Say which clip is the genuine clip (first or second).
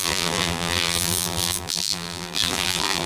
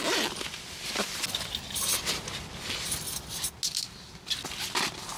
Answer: second